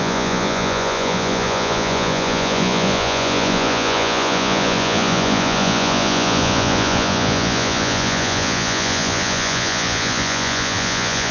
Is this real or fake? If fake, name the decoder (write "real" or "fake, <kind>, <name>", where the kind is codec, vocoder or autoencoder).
fake, vocoder, Vocos